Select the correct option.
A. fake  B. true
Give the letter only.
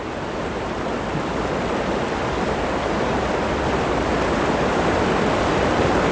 B